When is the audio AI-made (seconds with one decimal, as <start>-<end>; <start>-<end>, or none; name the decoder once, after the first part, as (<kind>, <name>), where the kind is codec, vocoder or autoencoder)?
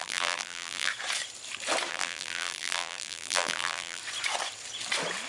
0.0-0.9 (vocoder, BigVGAN v2); 1.9-4.0